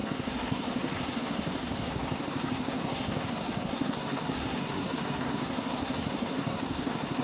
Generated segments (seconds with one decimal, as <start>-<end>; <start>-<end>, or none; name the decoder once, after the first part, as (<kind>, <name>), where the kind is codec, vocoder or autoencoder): 0.0-7.2 (codec, SNAC)